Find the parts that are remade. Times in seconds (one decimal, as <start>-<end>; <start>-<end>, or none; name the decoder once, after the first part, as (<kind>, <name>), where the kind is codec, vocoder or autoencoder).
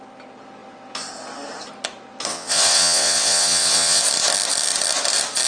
2.3-4.0 (vocoder, WaveNeXt)